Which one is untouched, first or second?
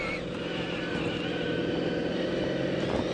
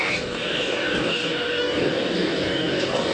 first